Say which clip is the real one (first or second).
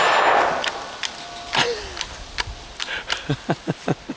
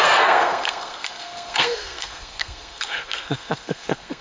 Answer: first